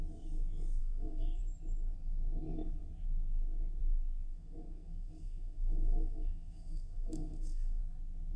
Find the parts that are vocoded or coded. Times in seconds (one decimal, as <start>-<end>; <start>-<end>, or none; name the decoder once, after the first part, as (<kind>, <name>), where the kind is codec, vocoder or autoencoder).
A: 0.8-1.4 (codec, SNAC); 4.3-7.8